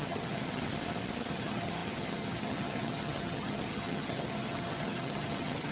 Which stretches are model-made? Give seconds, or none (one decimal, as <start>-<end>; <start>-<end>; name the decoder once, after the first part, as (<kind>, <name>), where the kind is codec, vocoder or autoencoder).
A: 0.0-0.6 (vocoder, HiFi-GAN); 1.3-5.7